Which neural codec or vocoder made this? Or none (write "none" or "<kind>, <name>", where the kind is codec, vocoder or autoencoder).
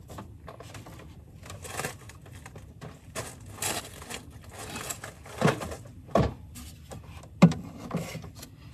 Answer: none